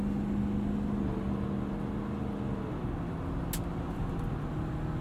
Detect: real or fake real